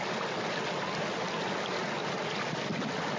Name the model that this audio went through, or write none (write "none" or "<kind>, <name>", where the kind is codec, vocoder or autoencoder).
none